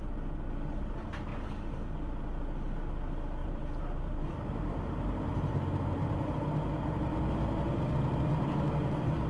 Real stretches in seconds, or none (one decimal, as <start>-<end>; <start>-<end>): 0.0-3.4; 7.9-9.3